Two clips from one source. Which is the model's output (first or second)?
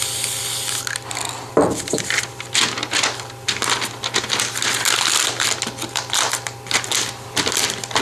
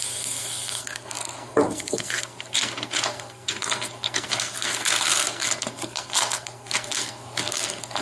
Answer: second